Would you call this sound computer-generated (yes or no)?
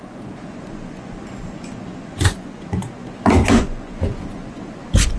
yes